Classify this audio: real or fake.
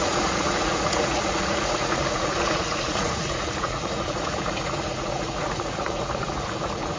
fake